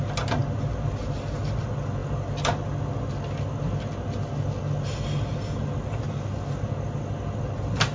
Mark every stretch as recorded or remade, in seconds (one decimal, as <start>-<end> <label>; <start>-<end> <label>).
0.0-7.9 recorded

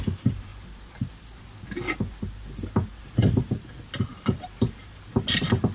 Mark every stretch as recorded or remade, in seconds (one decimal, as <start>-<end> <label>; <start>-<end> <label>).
0.0-4.1 recorded; 4.1-5.1 remade; 5.1-5.7 recorded